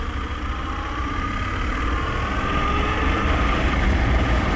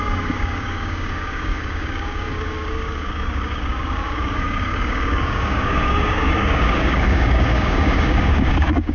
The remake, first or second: second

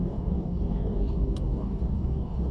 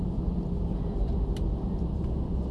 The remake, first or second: first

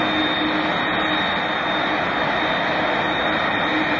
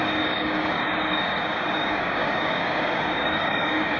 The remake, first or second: second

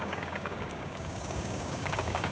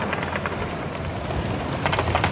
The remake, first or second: first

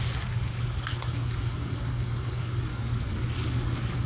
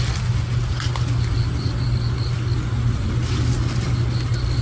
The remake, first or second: first